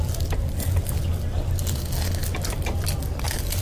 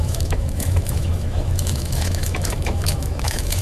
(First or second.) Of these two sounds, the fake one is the second